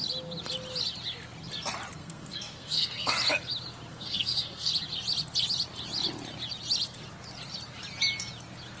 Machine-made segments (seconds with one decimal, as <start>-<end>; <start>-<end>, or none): 2.0-3.1; 3.9-4.7